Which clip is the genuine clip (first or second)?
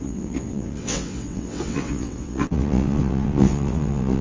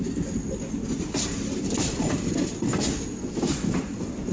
second